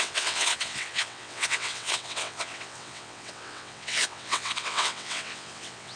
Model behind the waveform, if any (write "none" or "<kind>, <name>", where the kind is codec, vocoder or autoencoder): vocoder, WaveNeXt